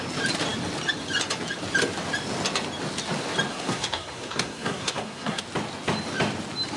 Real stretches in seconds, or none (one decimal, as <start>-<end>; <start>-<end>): 0.0-3.5; 5.4-6.8